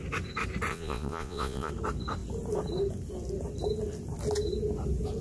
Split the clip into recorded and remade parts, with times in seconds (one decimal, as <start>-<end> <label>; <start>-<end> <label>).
0.0-0.7 recorded; 0.7-1.7 remade; 1.7-5.2 recorded